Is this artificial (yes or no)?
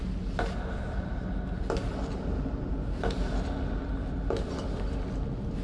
no